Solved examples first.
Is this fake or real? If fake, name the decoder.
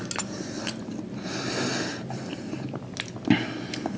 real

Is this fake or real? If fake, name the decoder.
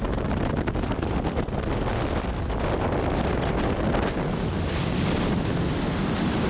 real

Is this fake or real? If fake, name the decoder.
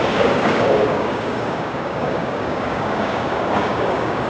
fake, codec, DAC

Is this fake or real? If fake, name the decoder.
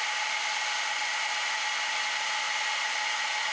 real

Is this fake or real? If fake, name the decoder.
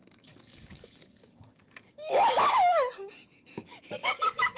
fake, codec, DAC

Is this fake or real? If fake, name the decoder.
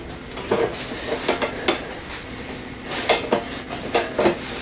real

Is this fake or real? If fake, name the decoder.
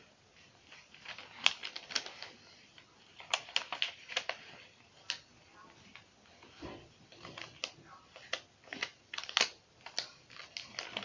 real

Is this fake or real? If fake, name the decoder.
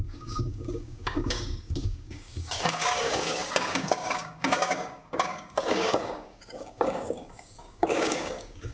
fake, codec, DAC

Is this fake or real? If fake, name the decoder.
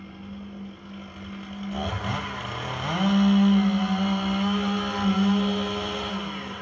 real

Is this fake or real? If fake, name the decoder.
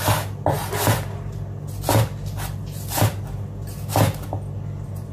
real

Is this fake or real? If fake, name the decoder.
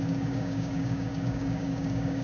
fake, codec, DAC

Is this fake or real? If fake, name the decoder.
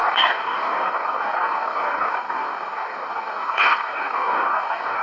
fake, codec, DAC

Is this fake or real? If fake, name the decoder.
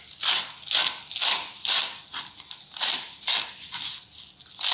real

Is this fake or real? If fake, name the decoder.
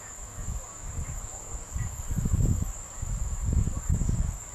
fake, codec, DAC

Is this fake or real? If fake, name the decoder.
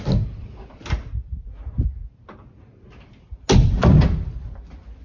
real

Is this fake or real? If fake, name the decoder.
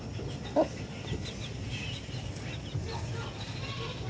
real